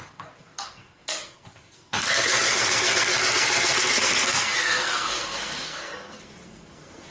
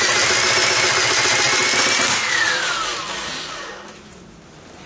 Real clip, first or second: second